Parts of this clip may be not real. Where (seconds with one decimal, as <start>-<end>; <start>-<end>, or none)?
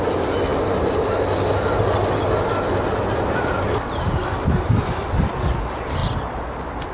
none